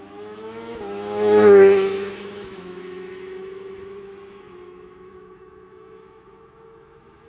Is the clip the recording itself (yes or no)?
no